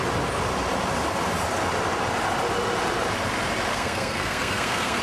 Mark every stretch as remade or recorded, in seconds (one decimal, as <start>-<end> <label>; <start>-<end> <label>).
0.0-3.7 recorded; 3.7-5.0 remade